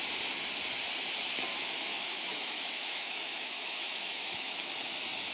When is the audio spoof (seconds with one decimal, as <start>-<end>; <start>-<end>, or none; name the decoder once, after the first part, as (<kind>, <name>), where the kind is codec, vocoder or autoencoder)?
1.5-4.7 (autoencoder, DAC-VAE)